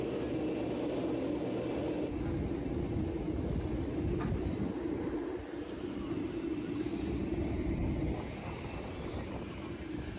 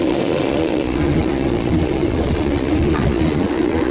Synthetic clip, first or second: second